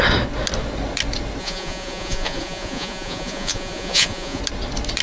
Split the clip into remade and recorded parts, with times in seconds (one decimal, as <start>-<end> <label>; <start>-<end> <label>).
0.0-1.4 recorded; 1.4-4.4 remade; 4.4-5.0 recorded